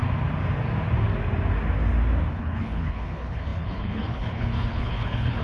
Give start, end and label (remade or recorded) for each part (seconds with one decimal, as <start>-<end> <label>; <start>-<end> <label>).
0.0-2.3 recorded; 2.3-5.4 remade

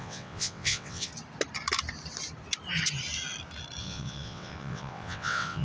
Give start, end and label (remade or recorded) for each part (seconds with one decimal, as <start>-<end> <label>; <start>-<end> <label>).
0.0-1.1 remade; 1.1-3.8 recorded; 3.8-5.6 remade